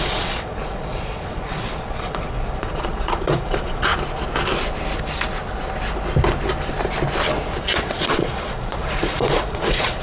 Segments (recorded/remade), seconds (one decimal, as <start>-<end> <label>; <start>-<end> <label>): 0.0-3.9 remade; 3.9-7.6 recorded; 7.6-10.0 remade